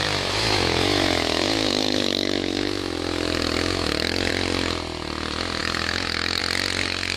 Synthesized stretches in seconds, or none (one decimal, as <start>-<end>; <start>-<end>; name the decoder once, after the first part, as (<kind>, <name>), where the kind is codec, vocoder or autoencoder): 0.0-4.3 (autoencoder, DAC-VAE); 5.6-6.4